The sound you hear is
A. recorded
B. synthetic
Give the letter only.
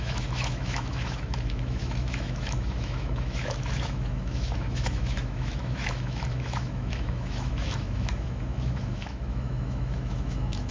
B